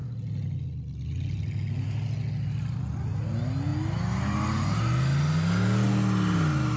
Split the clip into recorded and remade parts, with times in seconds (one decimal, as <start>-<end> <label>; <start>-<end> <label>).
0.0-6.8 recorded